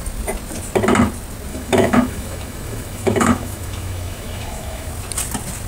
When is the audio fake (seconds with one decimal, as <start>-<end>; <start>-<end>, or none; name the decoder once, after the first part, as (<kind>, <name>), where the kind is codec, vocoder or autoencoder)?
1.5-4.9 (autoencoder, DAC-VAE)